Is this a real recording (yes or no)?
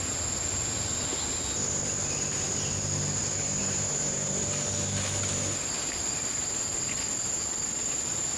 yes